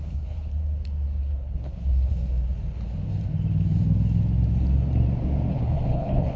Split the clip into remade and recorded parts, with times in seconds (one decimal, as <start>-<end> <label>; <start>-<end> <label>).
0.0-0.5 remade; 0.5-1.2 recorded; 1.2-2.1 remade; 2.1-5.5 recorded; 5.5-6.4 remade